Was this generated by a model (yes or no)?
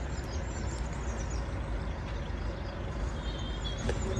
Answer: no